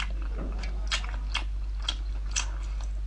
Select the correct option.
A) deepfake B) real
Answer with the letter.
B